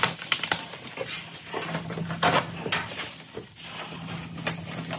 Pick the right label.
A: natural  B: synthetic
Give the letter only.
A